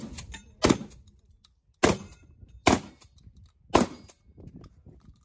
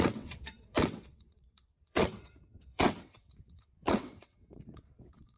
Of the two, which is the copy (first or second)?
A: second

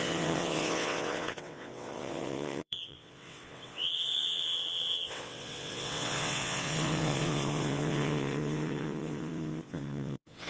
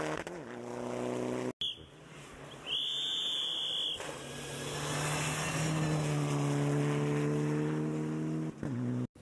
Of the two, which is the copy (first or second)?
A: first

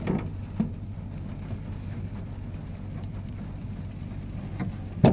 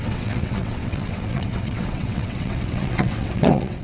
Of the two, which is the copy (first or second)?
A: second